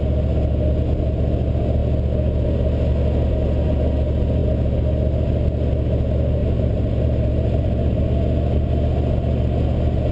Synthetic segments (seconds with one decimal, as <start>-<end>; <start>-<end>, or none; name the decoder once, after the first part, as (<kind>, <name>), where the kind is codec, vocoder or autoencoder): 6.4-8.0 (vocoder, BigVGAN v2)